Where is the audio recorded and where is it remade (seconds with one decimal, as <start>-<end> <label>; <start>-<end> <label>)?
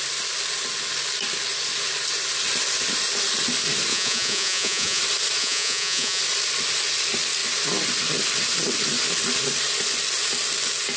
0.0-3.9 recorded; 3.9-5.0 remade; 5.0-5.4 recorded; 5.4-6.2 remade; 6.2-11.0 recorded